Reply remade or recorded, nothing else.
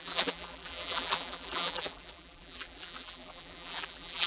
remade